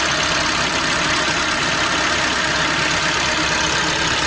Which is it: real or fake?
real